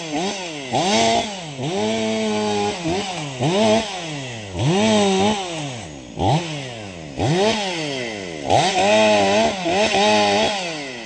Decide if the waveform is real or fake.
real